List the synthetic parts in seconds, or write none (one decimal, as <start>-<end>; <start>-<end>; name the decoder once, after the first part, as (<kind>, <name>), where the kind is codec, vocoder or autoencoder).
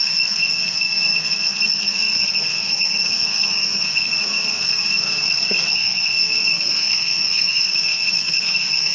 0.0-8.9 (codec, SNAC)